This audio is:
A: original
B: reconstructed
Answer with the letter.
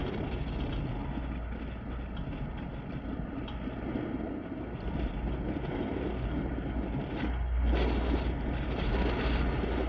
A